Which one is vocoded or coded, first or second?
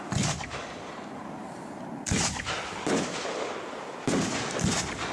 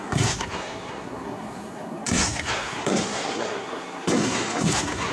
second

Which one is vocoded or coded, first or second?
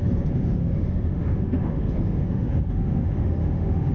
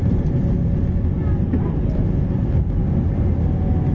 first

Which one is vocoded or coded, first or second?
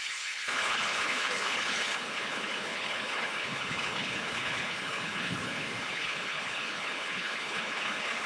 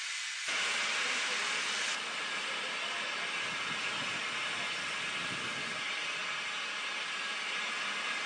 first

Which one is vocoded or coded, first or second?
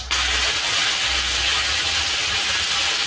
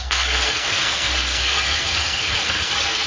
second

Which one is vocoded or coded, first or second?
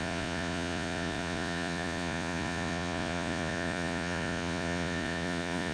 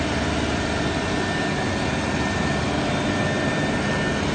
first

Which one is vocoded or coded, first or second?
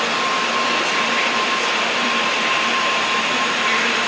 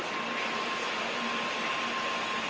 first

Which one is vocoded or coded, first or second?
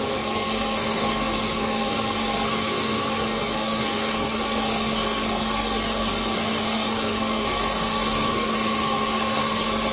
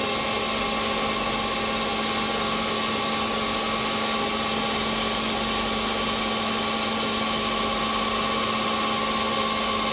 first